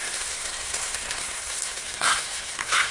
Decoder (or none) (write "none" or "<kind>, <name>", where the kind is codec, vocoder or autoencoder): codec, SNAC